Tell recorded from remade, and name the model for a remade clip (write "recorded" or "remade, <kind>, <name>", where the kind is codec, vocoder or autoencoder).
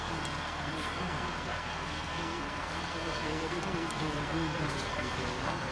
remade, codec, SNAC